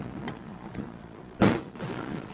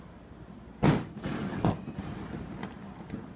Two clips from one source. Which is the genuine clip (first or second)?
second